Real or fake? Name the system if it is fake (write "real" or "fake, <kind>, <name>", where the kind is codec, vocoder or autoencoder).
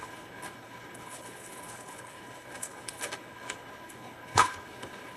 fake, codec, HILCodec